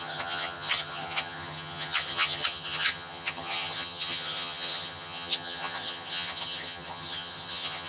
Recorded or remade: remade